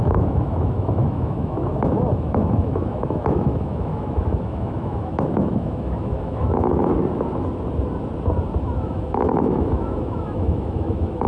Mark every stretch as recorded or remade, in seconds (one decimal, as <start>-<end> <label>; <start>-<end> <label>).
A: 0.0-6.9 remade; 6.9-8.6 recorded; 8.6-11.3 remade